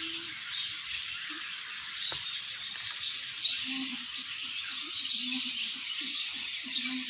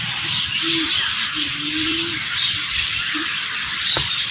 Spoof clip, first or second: second